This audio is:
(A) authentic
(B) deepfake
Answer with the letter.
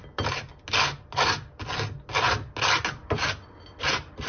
A